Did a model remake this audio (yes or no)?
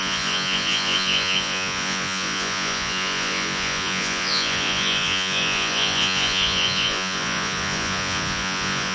yes